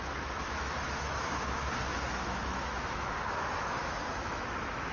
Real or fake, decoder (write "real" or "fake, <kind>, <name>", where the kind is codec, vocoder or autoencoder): fake, autoencoder, DAC-VAE